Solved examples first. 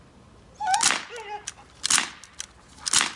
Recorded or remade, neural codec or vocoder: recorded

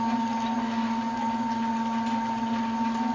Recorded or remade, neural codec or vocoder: recorded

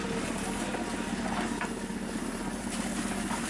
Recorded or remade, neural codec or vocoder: recorded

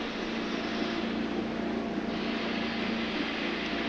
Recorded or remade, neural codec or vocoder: recorded